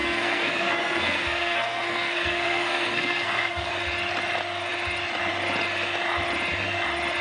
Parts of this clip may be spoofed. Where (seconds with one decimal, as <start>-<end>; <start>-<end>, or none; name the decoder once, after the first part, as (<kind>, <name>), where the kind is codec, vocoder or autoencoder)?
0.0-3.7 (codec, SNAC)